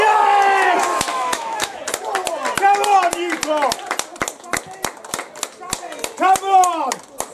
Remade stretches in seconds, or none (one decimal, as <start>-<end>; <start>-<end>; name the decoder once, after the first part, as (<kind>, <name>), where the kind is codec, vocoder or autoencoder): 1.1-1.8 (autoencoder, DAC-VAE)